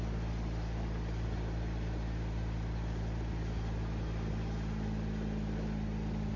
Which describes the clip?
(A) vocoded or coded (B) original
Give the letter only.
B